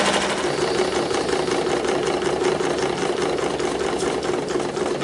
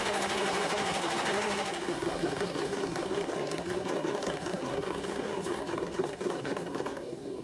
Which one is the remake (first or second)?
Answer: second